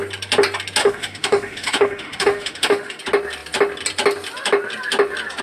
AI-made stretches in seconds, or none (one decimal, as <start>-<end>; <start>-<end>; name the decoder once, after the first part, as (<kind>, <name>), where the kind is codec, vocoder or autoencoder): 0.8-3.0 (autoencoder, DAC-VAE)